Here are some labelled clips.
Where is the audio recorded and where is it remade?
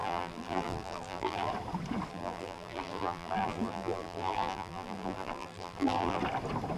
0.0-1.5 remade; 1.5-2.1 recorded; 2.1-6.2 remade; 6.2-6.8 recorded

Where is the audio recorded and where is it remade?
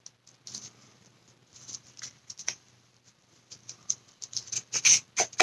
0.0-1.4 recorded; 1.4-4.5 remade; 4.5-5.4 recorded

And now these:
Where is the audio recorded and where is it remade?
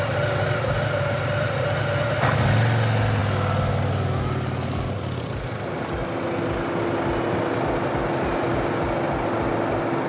0.0-10.1 recorded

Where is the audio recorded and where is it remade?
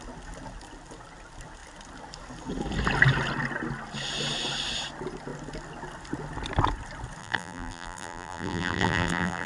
0.0-7.2 recorded; 7.2-9.5 remade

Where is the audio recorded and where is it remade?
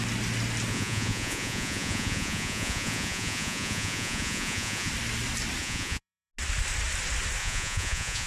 0.0-0.7 recorded; 0.7-4.9 remade; 4.9-5.6 recorded; 5.6-6.3 remade; 6.3-7.4 recorded; 7.4-8.3 remade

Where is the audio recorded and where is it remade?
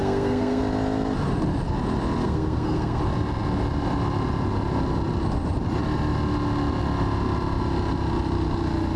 0.0-0.6 remade; 0.6-2.2 recorded; 2.2-3.0 remade; 3.0-9.0 recorded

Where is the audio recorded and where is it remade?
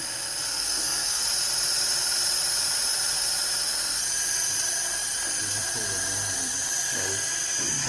0.0-0.5 recorded; 0.5-1.2 remade; 1.2-7.9 recorded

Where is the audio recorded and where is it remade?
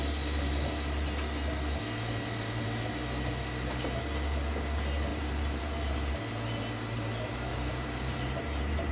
0.0-5.1 recorded; 5.1-6.1 remade; 6.1-7.5 recorded; 7.5-8.9 remade